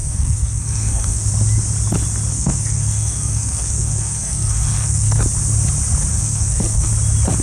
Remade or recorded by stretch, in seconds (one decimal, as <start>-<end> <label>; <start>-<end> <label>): 0.0-1.3 remade; 1.3-2.3 recorded; 2.3-5.2 remade; 5.2-6.1 recorded; 6.1-6.9 remade; 6.9-7.4 recorded